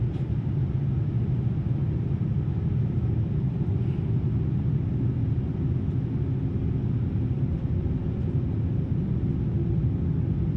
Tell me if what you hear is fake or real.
real